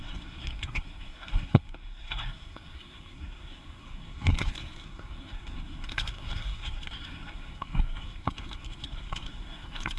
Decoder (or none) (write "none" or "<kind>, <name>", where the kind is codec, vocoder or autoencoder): codec, SNAC